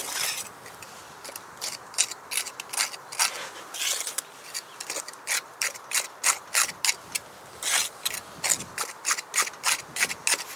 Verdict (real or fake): real